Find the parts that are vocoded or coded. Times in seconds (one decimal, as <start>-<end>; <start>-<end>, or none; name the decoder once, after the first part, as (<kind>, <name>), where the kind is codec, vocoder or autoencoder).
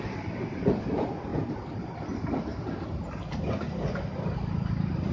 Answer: 0.0-2.5 (vocoder, BigVGAN v2); 3.9-5.1